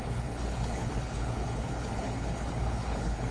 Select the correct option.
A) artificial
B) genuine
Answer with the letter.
A